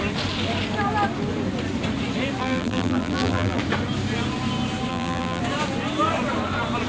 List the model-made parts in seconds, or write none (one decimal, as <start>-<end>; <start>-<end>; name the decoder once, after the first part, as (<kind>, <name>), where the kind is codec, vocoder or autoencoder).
2.4-3.6 (vocoder, BigVGAN v2); 4.9-5.4